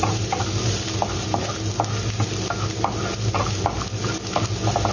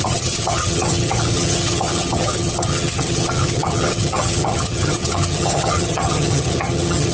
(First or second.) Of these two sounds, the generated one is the second